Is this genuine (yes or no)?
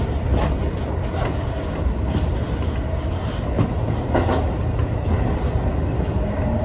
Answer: yes